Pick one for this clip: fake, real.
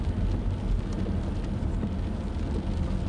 real